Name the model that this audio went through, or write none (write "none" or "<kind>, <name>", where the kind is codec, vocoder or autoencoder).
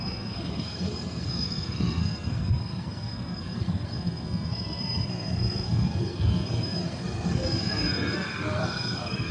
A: codec, SNAC